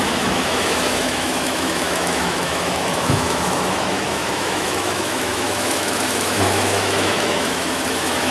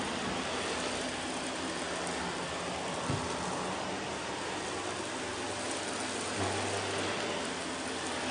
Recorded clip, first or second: second